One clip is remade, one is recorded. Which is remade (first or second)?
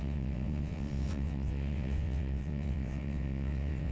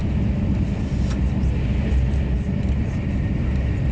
first